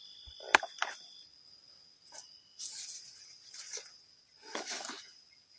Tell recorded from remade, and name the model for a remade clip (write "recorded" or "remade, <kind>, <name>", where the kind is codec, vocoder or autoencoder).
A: recorded